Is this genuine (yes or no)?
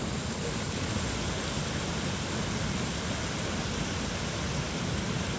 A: yes